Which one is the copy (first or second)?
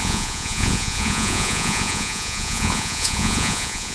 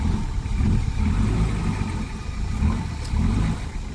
first